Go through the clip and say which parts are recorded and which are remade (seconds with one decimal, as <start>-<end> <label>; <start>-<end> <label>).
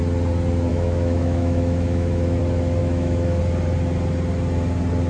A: 0.0-0.7 recorded; 0.7-2.4 remade; 2.4-2.8 recorded; 2.8-3.4 remade; 3.4-5.1 recorded